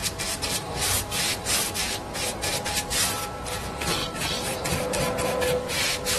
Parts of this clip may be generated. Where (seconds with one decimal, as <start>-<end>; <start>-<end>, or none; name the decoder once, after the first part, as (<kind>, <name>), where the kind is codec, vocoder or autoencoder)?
0.0-1.5 (vocoder, BigVGAN v2)

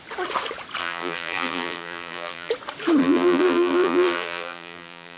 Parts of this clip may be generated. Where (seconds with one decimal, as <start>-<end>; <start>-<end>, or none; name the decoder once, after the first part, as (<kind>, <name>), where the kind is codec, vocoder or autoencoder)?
0.8-2.5 (vocoder, BigVGAN v2); 3.0-5.2

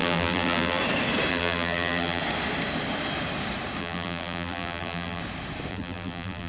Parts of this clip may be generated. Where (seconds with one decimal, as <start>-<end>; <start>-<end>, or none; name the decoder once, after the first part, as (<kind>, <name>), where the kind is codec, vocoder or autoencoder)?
0.0-0.8 (vocoder, BigVGAN v2); 1.3-2.2; 3.8-5.2; 5.7-6.5

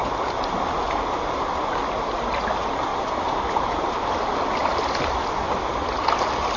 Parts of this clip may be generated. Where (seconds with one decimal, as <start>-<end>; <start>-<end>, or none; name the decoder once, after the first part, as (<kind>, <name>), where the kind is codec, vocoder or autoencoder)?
2.9-5.0 (vocoder, BigVGAN v2)

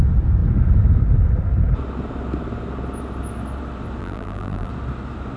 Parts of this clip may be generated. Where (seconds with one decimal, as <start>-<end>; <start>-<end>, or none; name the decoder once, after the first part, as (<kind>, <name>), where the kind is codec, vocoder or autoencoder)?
4.0-4.7 (vocoder, BigVGAN v2)